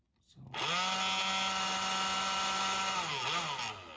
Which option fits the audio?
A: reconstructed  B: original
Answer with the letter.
B